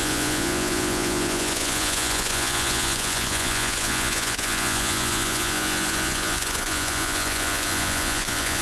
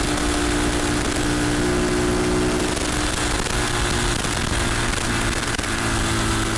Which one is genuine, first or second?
second